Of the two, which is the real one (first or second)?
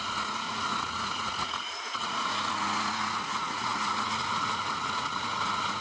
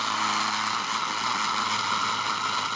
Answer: second